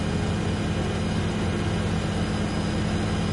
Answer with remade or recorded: recorded